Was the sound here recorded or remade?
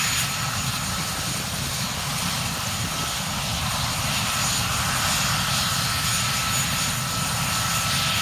recorded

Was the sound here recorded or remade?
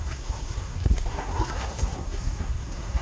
remade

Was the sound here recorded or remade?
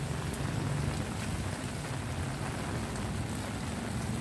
recorded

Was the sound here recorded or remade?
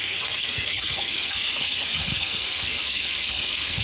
remade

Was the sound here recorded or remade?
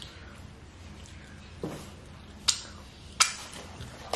recorded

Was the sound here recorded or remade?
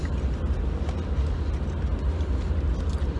recorded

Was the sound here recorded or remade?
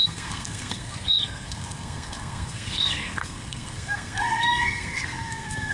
remade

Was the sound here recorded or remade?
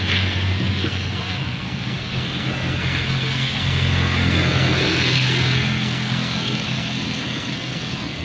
remade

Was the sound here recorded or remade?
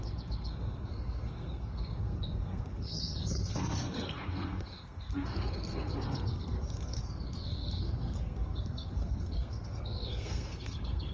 remade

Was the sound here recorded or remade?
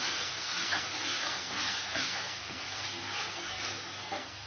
remade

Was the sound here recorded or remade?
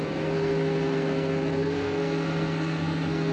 remade